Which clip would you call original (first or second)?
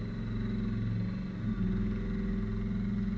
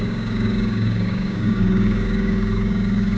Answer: first